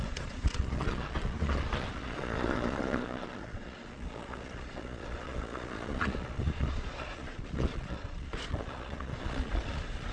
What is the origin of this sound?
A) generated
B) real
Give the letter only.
A